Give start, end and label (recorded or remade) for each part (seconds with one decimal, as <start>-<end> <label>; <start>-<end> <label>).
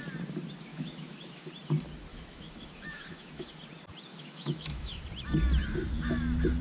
0.0-0.7 recorded; 0.7-1.5 remade; 1.5-2.1 recorded; 2.1-3.5 remade; 3.5-4.1 recorded; 4.1-5.0 remade; 5.0-6.6 recorded